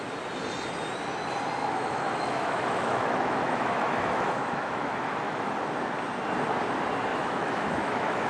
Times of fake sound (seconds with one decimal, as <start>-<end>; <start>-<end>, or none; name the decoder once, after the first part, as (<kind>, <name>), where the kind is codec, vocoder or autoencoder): 1.6-5.5 (autoencoder, DAC-VAE); 7.1-8.3